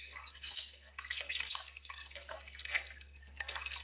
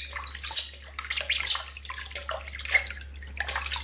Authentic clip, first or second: second